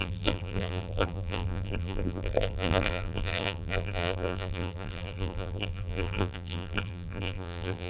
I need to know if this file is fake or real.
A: fake